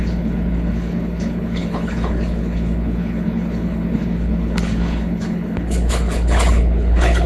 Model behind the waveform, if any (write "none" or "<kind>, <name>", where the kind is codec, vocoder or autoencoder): codec, HILCodec